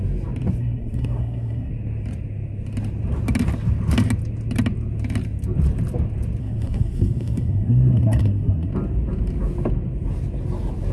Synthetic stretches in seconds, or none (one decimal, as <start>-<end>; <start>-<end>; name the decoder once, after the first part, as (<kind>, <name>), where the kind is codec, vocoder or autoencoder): 0.6-1.7 (codec, SNAC); 6.4-8.7

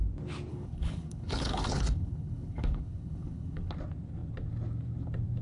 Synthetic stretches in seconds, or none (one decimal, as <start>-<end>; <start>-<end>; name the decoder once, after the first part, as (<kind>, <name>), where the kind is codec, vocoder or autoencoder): 0.5-3.7 (codec, HILCodec)

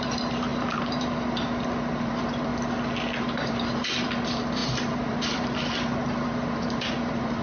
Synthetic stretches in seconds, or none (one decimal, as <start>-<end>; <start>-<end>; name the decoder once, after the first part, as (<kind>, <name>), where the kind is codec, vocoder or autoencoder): 0.0-2.5 (vocoder, BigVGAN v2); 3.2-7.4

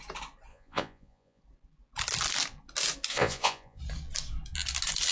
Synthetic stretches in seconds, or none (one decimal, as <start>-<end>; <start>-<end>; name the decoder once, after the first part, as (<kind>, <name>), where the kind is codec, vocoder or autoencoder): 0.5-1.4 (vocoder, Vocos); 3.1-3.8

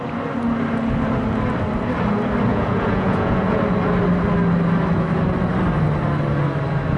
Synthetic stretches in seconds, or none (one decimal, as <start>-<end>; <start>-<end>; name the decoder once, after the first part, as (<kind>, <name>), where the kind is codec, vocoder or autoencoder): 2.5-3.6 (vocoder, Vocos)